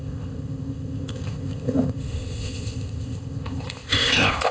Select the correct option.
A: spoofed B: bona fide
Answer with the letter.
A